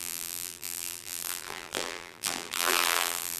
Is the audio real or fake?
fake